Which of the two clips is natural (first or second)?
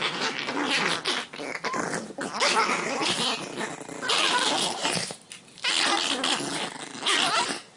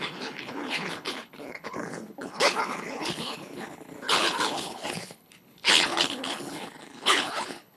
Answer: first